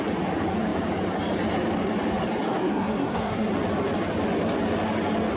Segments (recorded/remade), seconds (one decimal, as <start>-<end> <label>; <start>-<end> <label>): 0.0-2.6 recorded; 2.6-3.5 remade; 3.5-5.4 recorded